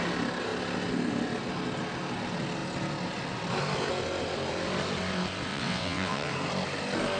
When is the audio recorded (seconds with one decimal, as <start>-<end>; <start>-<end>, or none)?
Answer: 0.0-5.5; 6.3-7.2